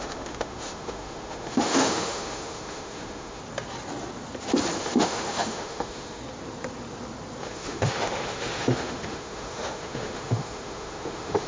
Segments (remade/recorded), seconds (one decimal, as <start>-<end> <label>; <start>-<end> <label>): 0.0-3.4 remade; 3.4-4.8 recorded; 4.8-6.2 remade; 6.2-7.4 recorded; 7.4-11.5 remade